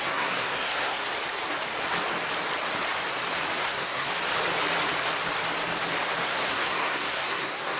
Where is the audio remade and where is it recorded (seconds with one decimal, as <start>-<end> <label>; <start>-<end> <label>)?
0.0-1.0 remade; 1.0-3.6 recorded; 3.6-4.1 remade; 4.1-6.2 recorded; 6.2-7.8 remade